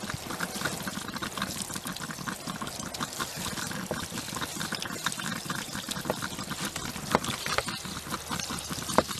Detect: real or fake real